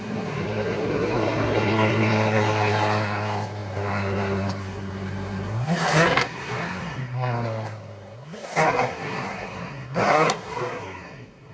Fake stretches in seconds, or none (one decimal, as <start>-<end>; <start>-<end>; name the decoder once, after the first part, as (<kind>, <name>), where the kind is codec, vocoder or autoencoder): 0.0-11.5 (codec, SNAC)